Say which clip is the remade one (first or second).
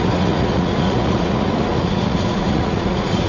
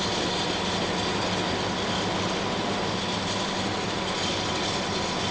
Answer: first